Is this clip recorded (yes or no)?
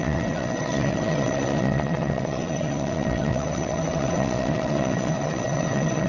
no